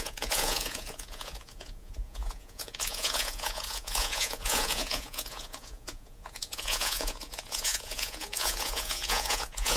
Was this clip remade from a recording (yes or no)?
yes